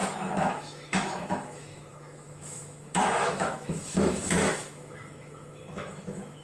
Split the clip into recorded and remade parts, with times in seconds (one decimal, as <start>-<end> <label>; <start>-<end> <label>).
0.0-6.4 remade